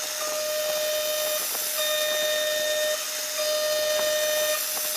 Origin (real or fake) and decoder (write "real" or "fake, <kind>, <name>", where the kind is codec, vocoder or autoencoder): real